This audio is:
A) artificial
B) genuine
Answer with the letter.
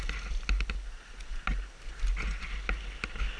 B